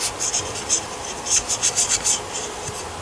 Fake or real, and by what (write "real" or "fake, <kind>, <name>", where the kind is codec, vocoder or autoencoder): real